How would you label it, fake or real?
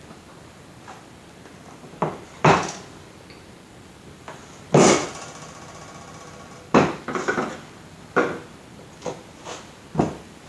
real